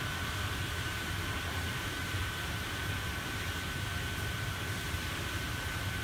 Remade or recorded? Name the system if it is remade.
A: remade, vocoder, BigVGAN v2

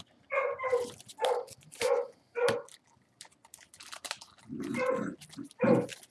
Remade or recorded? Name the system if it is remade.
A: recorded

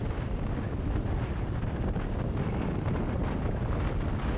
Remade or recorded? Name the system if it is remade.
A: recorded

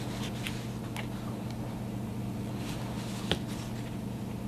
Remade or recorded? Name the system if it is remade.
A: recorded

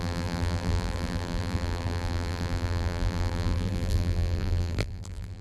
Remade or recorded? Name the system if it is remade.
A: remade, vocoder, BigVGAN v2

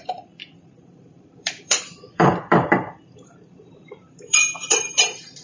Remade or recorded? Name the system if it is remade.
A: remade, vocoder, BigVGAN v2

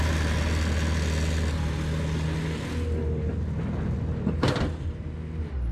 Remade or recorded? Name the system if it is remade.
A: recorded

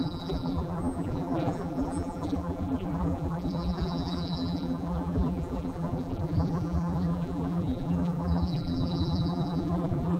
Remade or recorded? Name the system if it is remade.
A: remade, vocoder, BigVGAN v2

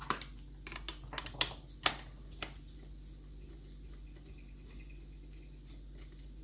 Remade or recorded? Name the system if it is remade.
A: recorded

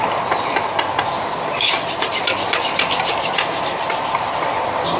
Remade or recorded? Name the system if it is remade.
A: recorded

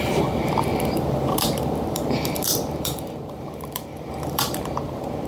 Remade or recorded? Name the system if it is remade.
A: remade, vocoder, BigVGAN v2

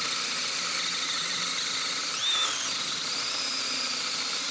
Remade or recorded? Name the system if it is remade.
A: recorded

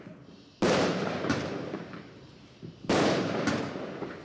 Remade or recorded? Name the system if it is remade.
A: remade, vocoder, BigVGAN v2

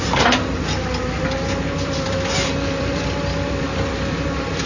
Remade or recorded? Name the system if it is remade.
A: remade, vocoder, BigVGAN v2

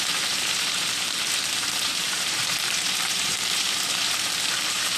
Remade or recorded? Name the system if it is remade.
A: remade, vocoder, BigVGAN v2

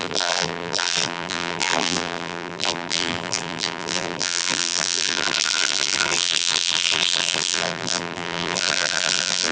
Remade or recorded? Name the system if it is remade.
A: remade, vocoder, BigVGAN v2